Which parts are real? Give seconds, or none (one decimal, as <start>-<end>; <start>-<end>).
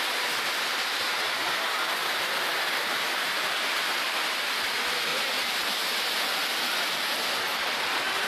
0.0-5.1; 7.4-8.3